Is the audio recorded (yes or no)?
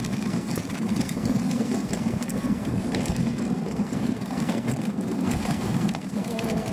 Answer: no